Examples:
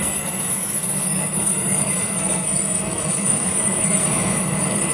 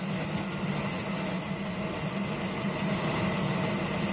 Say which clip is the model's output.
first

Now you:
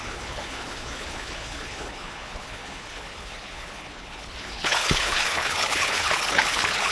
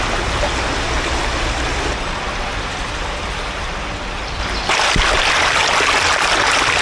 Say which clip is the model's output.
first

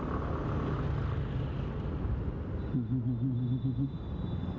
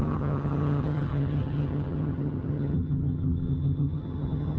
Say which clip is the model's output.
second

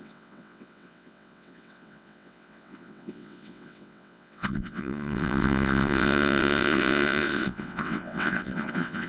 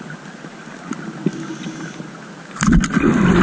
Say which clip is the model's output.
first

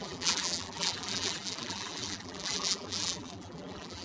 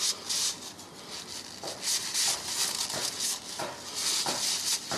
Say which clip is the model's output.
first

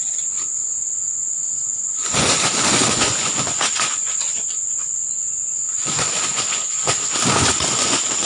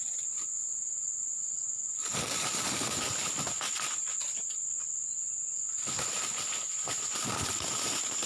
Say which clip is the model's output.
first